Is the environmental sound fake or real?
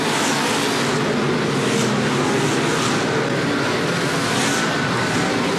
real